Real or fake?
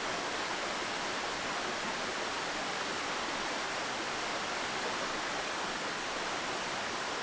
real